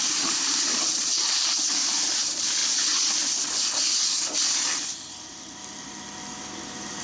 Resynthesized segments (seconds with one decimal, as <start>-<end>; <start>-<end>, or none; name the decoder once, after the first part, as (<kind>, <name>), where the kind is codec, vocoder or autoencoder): 0.0-2.6 (vocoder, BigVGAN v2)